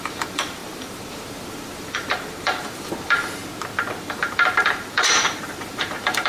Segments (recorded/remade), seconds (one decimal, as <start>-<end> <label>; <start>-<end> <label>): 0.0-3.4 remade; 3.4-4.0 recorded; 4.0-6.3 remade